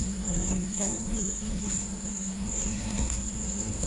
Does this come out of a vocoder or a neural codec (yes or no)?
yes